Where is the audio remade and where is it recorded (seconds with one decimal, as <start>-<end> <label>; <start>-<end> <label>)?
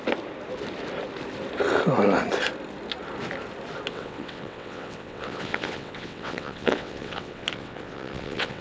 0.0-3.9 recorded; 3.9-8.6 remade